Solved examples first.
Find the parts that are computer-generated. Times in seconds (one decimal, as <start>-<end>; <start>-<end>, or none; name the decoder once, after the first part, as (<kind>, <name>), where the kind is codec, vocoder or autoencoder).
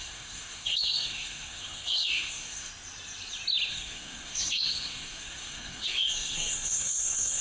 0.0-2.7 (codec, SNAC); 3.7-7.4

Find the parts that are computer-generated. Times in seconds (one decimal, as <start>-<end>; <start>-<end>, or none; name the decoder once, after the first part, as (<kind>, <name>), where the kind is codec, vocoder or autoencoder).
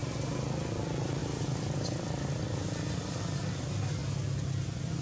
1.2-3.2 (vocoder, BigVGAN v2)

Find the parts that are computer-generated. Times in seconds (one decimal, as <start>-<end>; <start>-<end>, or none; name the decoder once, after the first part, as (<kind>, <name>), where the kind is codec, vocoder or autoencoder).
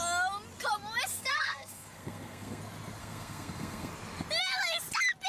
1.1-2.6 (codec, SNAC); 3.0-3.9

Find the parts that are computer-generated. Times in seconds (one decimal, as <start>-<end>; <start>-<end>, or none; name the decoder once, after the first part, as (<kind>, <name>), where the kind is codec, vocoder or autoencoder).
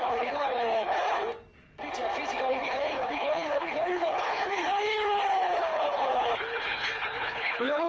0.0-1.2 (codec, HILCodec); 2.5-7.9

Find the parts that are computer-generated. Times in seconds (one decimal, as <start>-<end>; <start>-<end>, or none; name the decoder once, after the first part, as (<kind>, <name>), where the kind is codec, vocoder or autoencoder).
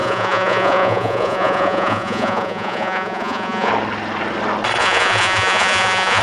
0.0-3.7 (vocoder, Vocos); 4.8-6.2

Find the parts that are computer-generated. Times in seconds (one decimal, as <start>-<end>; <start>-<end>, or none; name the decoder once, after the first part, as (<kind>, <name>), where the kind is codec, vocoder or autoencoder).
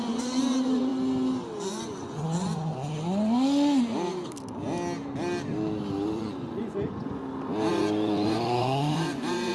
0.0-0.9 (vocoder, Vocos); 1.7-2.7; 6.2-7.2; 7.7-9.5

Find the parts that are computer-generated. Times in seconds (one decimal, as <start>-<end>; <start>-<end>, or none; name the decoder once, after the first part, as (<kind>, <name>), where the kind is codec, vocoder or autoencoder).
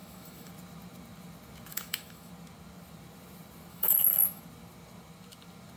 0.0-0.5 (autoencoder, DAC-VAE); 1.7-2.3; 3.7-4.4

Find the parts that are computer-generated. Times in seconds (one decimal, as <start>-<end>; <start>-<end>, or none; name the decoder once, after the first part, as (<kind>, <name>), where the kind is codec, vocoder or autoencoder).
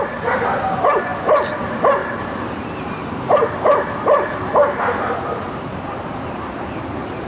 none